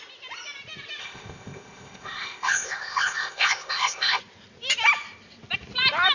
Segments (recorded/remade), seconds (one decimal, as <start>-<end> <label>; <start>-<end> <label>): 0.0-1.0 recorded; 1.0-4.2 remade; 4.2-6.1 recorded